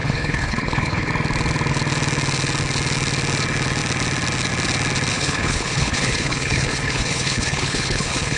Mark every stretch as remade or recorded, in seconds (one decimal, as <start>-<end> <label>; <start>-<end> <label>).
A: 0.0-1.1 remade; 1.1-5.1 recorded; 5.1-8.4 remade